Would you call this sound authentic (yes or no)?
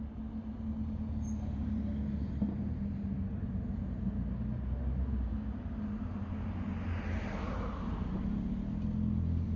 yes